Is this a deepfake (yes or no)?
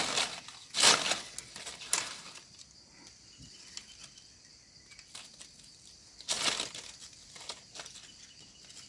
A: no